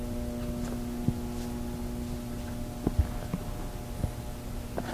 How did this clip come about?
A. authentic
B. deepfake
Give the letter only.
A